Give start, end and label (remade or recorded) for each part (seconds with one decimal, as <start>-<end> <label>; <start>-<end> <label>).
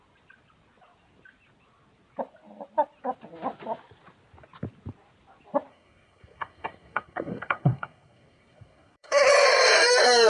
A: 0.0-5.7 recorded; 5.7-9.3 remade; 9.3-10.3 recorded